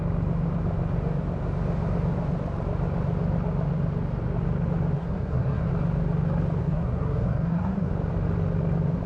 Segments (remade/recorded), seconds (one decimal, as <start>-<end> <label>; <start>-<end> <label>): 0.0-5.0 recorded; 5.0-5.7 remade; 5.7-6.6 recorded; 6.6-7.9 remade; 7.9-9.1 recorded